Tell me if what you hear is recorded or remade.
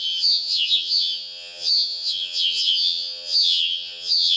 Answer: remade